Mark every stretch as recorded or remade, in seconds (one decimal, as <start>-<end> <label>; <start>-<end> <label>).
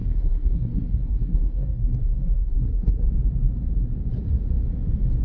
0.0-3.1 remade; 3.1-5.2 recorded